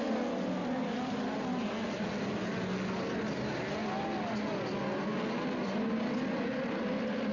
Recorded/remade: recorded